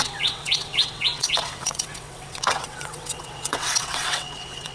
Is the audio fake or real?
fake